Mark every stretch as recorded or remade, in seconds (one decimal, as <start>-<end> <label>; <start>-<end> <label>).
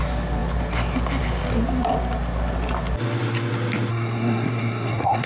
0.0-3.9 recorded; 3.9-5.3 remade